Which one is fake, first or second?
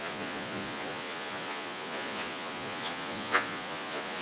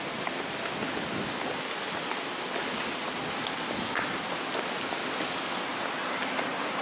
first